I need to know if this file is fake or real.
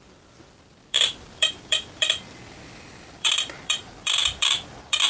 fake